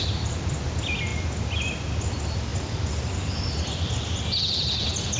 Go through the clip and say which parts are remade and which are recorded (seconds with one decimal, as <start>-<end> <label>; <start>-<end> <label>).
0.0-5.2 recorded